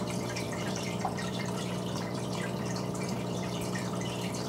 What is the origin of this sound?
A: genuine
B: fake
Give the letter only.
B